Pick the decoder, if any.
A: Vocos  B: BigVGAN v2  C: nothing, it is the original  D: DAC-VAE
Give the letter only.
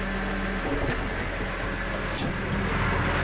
C